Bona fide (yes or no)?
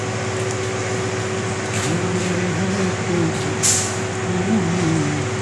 yes